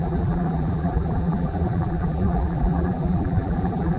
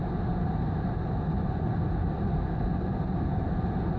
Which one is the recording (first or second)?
second